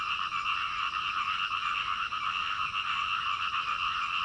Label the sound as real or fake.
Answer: real